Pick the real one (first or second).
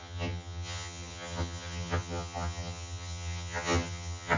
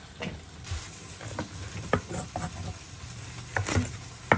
second